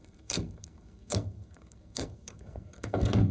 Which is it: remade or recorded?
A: remade